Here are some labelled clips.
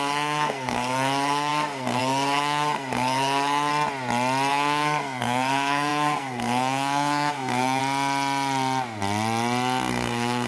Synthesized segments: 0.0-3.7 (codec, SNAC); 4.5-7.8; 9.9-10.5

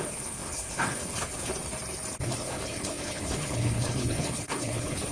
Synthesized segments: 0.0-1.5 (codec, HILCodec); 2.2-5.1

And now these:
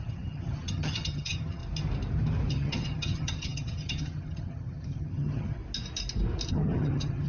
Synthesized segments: 0.0-1.6 (vocoder, HiFi-GAN); 2.5-5.6; 6.5-7.3

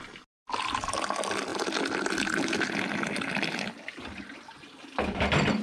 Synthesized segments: none